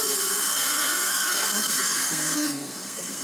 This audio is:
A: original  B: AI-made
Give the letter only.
B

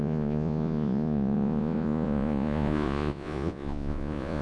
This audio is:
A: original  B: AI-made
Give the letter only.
B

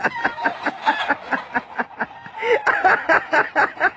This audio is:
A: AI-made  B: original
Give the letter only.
B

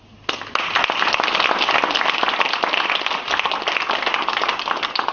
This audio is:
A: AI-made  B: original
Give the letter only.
B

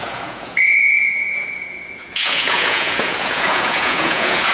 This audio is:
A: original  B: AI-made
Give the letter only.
B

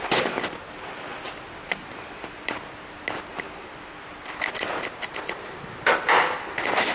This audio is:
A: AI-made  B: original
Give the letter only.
B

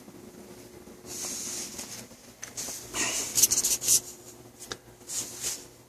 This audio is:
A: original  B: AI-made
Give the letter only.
A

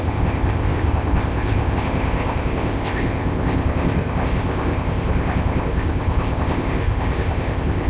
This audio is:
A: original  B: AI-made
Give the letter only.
B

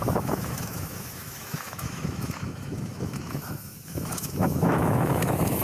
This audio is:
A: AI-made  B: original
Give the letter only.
A